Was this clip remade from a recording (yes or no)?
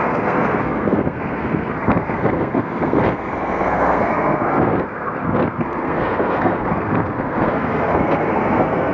yes